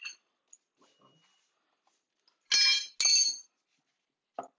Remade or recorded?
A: recorded